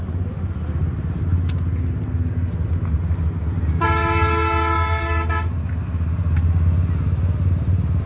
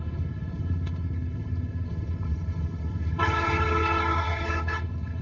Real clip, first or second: first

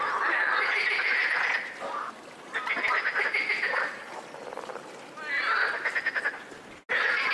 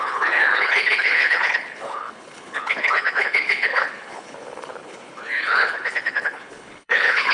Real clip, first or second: first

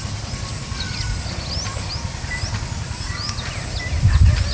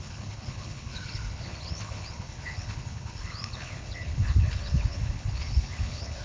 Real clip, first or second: first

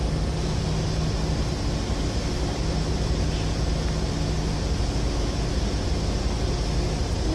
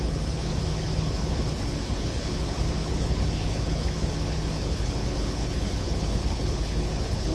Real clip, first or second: first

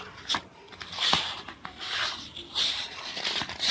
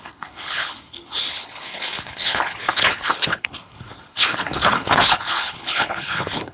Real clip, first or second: first